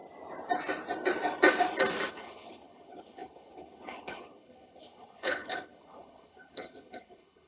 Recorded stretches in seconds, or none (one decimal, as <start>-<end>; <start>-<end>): 0.0-2.1